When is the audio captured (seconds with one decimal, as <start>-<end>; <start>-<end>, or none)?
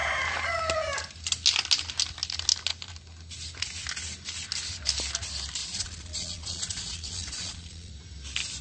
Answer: 0.0-5.6; 7.9-8.6